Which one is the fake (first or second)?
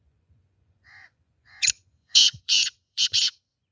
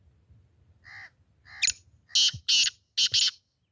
first